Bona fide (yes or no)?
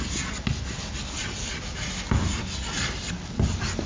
yes